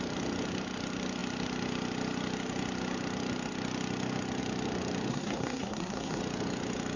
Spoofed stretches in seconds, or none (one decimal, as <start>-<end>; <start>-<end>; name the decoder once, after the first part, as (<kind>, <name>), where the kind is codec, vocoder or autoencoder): 5.1-6.2 (codec, SNAC)